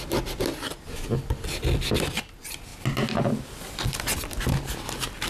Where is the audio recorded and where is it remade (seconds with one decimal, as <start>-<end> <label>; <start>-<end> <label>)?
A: 0.0-5.3 recorded